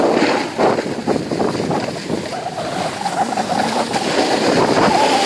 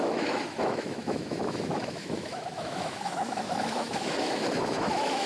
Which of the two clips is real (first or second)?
first